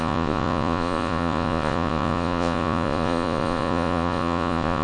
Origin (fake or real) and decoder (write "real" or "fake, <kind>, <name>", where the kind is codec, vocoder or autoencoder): fake, vocoder, Vocos